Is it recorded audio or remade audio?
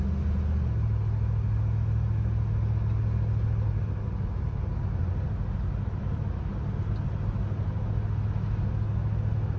recorded